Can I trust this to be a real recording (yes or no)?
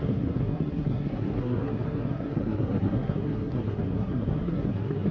no